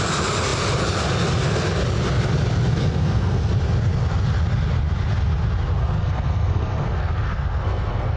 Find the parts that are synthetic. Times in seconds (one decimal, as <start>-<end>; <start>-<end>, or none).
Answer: 2.7-3.5; 5.8-8.2